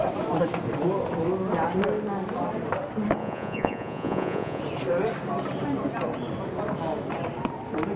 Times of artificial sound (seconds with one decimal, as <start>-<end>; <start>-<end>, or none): 3.2-4.6